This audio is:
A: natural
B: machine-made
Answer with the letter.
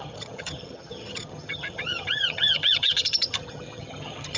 B